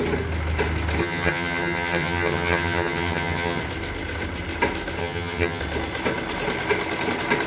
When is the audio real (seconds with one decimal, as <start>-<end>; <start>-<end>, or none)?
0.0-1.0; 3.6-5.0; 5.6-7.5